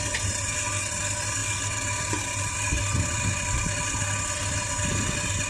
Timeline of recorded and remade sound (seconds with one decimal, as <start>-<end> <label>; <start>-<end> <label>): 0.0-5.5 recorded